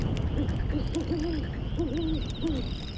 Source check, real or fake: real